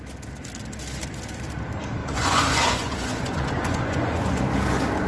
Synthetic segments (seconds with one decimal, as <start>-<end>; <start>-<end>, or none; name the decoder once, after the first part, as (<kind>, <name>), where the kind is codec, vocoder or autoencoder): 2.0-4.4 (vocoder, Vocos)